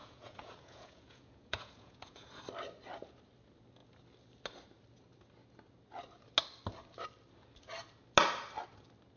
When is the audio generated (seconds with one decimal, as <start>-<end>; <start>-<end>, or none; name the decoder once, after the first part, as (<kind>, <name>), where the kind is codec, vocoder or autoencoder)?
0.0-2.4 (vocoder, Vocos)